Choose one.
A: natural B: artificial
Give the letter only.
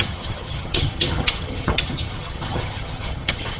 B